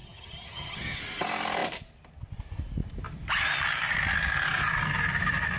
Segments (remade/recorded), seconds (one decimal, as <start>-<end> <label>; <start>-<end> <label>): 0.0-1.0 remade; 1.0-5.6 recorded